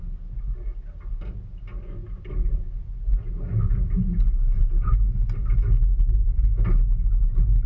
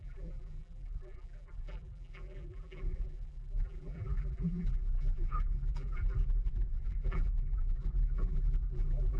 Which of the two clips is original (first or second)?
first